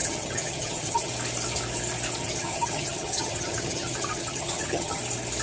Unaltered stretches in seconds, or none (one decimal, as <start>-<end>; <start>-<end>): 1.1-2.2; 5.0-5.4